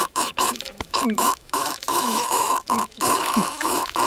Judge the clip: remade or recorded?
remade